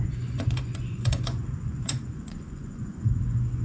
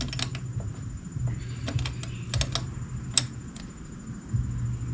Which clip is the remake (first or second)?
first